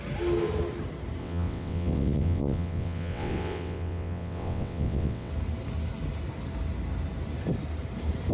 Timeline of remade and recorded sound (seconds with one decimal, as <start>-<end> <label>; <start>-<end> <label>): 0.0-1.2 recorded; 1.2-5.3 remade; 5.3-8.3 recorded